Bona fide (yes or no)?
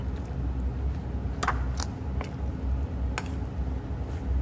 yes